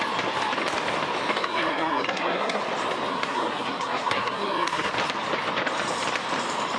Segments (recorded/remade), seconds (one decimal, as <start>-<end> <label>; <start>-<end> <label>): 0.0-1.3 recorded; 1.3-2.6 remade; 2.6-3.1 recorded; 3.1-4.9 remade; 4.9-6.8 recorded